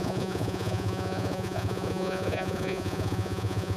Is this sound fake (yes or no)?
yes